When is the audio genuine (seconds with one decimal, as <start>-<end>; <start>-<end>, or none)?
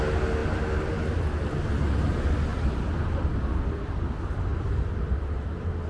0.0-2.5; 3.8-4.5; 5.5-5.9